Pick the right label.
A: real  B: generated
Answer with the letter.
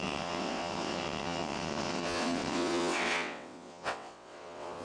B